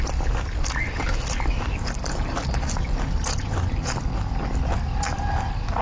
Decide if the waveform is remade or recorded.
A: recorded